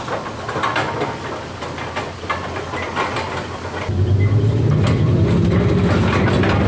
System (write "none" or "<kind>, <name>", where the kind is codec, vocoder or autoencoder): none